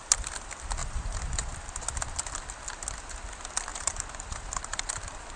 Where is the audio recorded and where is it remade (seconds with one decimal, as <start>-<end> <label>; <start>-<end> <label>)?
0.0-0.8 recorded; 0.8-1.5 remade; 1.5-3.7 recorded; 3.7-4.9 remade; 4.9-5.4 recorded